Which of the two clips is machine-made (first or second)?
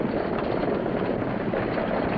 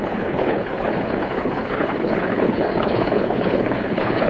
second